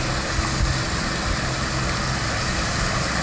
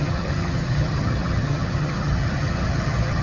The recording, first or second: first